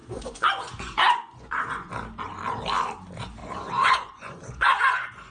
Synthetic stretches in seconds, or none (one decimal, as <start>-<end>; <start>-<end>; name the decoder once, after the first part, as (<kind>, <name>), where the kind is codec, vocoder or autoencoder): 0.0-1.9 (vocoder, Vocos); 3.4-5.3